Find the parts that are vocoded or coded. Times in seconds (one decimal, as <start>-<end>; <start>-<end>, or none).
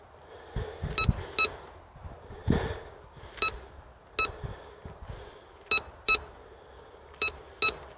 none